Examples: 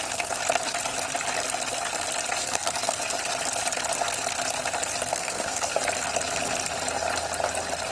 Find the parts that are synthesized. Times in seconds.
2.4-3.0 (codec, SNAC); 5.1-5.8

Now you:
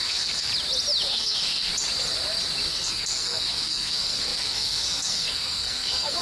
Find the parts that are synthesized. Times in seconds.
0.0-0.5 (codec, SNAC); 1.1-1.7; 2.7-6.2

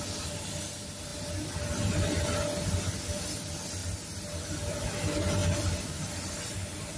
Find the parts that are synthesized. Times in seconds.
none